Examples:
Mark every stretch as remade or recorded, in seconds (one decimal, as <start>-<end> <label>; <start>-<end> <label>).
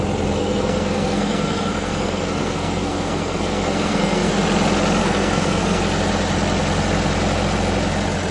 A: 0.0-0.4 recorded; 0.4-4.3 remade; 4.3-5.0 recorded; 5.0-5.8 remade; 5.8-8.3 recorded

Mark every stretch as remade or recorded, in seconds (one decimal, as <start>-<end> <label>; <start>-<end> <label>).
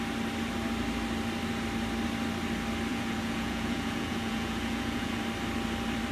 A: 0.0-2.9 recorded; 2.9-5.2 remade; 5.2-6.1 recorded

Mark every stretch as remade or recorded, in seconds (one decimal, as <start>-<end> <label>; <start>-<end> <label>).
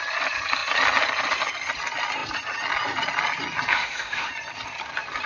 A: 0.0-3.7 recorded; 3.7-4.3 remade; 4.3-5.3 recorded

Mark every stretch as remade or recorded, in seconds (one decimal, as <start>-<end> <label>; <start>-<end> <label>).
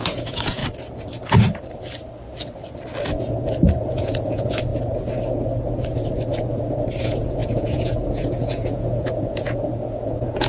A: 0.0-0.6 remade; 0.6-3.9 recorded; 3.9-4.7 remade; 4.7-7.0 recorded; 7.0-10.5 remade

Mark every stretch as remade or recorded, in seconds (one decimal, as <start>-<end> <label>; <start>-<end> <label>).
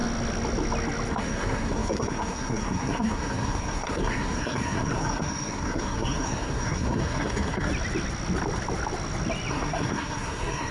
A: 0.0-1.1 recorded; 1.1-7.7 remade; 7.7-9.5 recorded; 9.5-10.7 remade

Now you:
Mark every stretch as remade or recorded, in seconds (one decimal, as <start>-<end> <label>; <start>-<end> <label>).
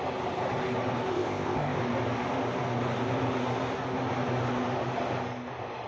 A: 0.0-1.1 recorded; 1.1-1.8 remade; 1.8-5.9 recorded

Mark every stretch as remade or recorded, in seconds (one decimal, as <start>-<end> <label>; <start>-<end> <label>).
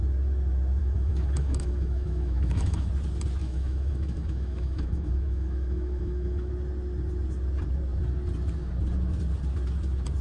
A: 0.0-0.8 recorded; 0.8-2.9 remade; 2.9-3.4 recorded; 3.4-6.5 remade; 6.5-10.2 recorded